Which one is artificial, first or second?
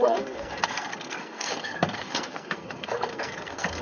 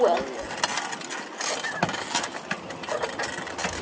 first